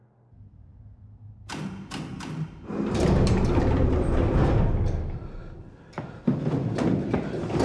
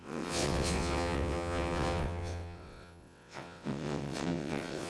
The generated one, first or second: second